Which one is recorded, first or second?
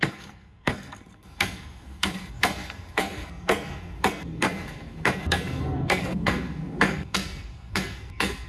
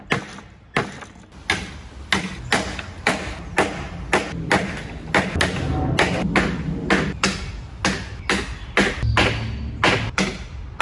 second